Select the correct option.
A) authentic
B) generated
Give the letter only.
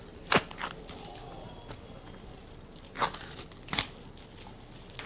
A